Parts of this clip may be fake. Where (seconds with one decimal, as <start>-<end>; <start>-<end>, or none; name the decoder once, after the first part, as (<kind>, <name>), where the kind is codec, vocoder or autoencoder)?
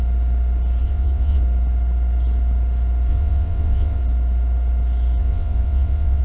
0.8-1.4 (vocoder, WaveNeXt); 3.1-4.0; 5.2-6.2